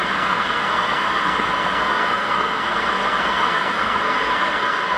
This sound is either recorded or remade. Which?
remade